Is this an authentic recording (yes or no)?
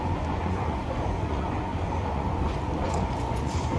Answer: no